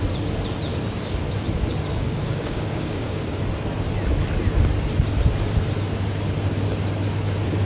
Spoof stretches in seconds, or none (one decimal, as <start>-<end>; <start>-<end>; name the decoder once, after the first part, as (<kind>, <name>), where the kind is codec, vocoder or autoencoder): 1.9-3.4 (codec, DAC)